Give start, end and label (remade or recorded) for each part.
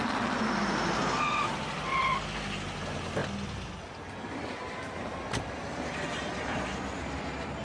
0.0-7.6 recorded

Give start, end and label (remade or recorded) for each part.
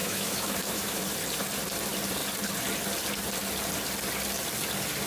0.0-1.0 remade; 1.0-5.1 recorded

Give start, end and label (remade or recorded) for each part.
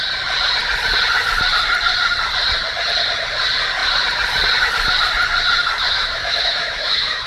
0.0-5.8 recorded; 5.8-7.3 remade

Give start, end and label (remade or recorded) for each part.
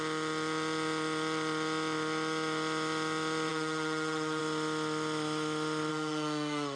0.0-3.5 recorded; 3.5-4.4 remade; 4.4-5.9 recorded; 5.9-6.8 remade